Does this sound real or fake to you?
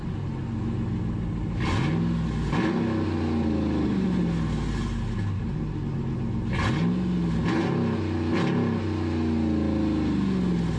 real